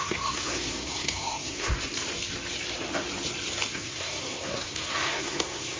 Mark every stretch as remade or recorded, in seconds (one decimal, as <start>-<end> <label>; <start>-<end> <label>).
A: 0.0-1.7 remade; 1.7-3.7 recorded; 3.7-5.8 remade